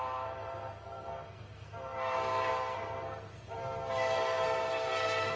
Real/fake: fake